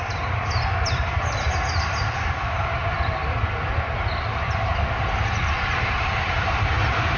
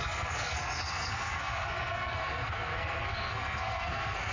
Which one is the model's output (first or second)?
second